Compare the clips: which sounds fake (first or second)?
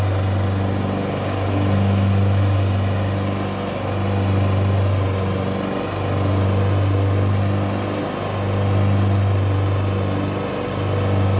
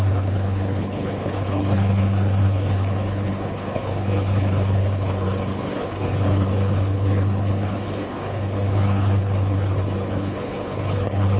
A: second